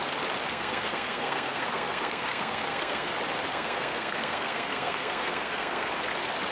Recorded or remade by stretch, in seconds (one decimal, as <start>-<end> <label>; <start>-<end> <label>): 0.0-0.5 recorded; 0.5-3.1 remade; 3.1-3.5 recorded; 3.5-5.9 remade; 5.9-6.5 recorded